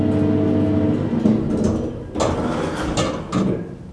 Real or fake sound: real